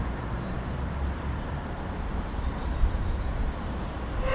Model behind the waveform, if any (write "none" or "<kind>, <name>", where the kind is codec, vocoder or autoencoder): vocoder, BigVGAN v2